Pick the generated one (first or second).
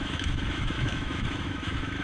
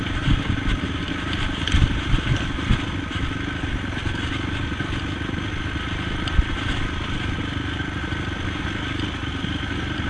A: first